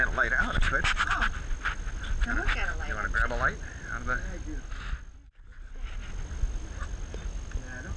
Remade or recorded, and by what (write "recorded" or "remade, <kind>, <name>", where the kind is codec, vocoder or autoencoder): recorded